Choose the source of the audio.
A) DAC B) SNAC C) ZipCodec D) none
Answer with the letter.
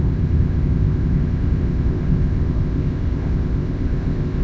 C